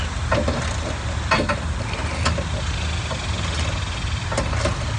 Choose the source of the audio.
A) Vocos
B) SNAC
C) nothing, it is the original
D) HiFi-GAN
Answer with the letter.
C